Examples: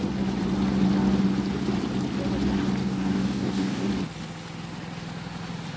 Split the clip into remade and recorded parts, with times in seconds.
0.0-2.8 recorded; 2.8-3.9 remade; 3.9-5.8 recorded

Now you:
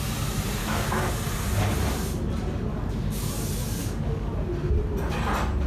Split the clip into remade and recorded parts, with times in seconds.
0.0-0.6 recorded; 0.6-1.1 remade; 1.1-2.7 recorded; 2.7-3.3 remade; 3.3-3.8 recorded; 3.8-4.3 remade; 4.3-5.7 recorded

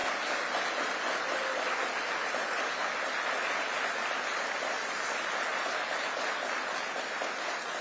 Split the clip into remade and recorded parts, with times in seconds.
0.0-7.8 recorded

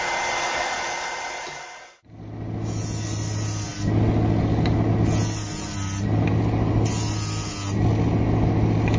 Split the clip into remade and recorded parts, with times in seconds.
0.0-9.0 recorded

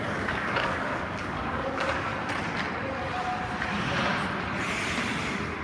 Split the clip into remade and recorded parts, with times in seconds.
0.0-2.1 remade; 2.1-5.6 recorded

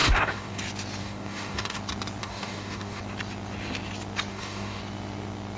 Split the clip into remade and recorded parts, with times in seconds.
0.0-0.6 remade; 0.6-1.0 recorded; 1.0-1.8 remade; 1.8-2.2 recorded; 2.2-3.0 remade; 3.0-4.3 recorded; 4.3-4.8 remade; 4.8-5.6 recorded

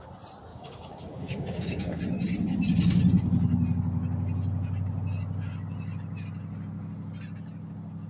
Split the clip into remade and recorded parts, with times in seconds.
0.0-0.5 recorded; 0.5-2.0 remade; 2.0-8.1 recorded

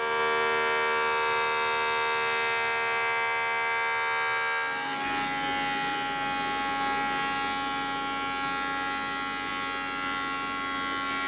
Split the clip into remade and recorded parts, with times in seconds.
0.0-11.3 recorded